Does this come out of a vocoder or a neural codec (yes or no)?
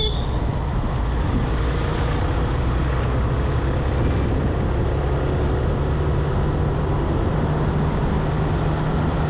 no